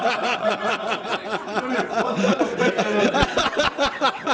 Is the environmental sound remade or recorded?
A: remade